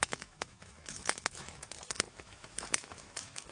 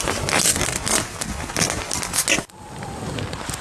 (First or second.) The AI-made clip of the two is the first